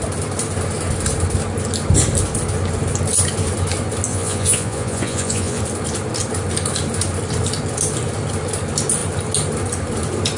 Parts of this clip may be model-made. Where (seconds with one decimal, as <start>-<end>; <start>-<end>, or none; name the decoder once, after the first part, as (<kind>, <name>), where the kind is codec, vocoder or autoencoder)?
4.1-5.6 (vocoder, Vocos)